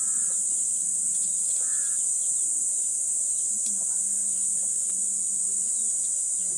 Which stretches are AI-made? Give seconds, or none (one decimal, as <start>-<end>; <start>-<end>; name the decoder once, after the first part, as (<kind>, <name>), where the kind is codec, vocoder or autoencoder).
0.7-3.5 (vocoder, Vocos)